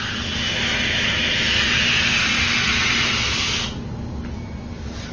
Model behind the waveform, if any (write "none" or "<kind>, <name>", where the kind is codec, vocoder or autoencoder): none